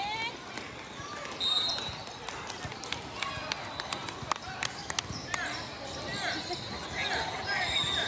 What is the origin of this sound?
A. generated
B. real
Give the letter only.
B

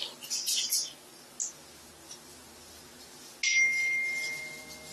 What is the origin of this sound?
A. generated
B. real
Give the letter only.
B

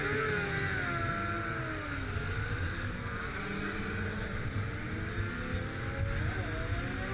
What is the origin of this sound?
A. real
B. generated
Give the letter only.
A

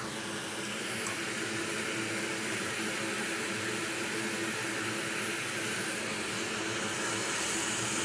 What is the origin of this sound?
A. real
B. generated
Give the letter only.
A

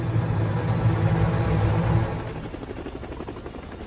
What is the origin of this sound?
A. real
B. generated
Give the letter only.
A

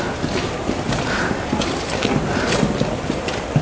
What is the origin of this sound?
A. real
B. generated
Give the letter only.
A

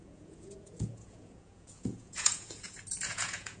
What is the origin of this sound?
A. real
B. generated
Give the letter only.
B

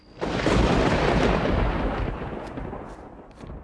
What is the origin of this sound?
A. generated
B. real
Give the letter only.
A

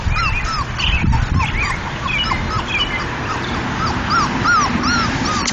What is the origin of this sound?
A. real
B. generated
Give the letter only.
A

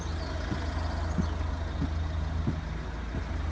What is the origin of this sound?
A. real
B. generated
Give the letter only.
A